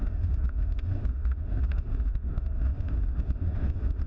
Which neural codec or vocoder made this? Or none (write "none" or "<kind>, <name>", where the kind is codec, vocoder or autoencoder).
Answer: autoencoder, DAC-VAE